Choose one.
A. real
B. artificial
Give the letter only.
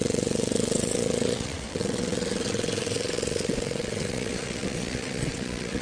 B